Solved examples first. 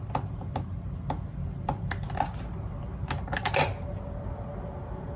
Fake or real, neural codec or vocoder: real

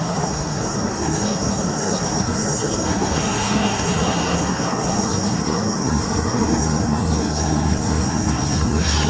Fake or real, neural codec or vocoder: fake, codec, SNAC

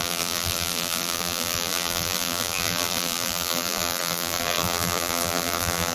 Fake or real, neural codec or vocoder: fake, vocoder, BigVGAN v2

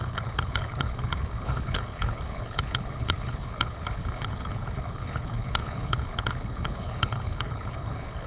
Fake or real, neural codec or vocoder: fake, codec, HILCodec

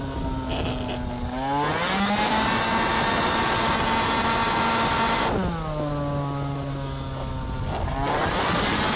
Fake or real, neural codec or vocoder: real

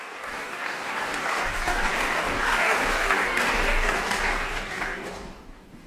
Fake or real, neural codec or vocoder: fake, codec, DAC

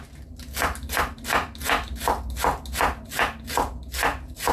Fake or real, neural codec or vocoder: real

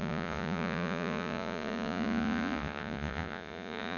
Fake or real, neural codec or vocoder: fake, vocoder, Vocos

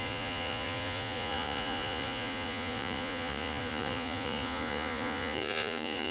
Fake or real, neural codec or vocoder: fake, vocoder, Vocos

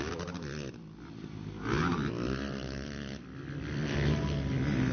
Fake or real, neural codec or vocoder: real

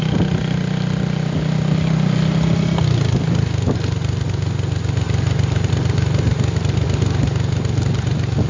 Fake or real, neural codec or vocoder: real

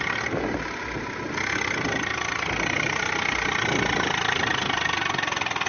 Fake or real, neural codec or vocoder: real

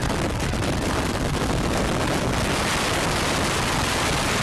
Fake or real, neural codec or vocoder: real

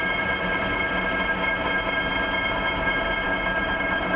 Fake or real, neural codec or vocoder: real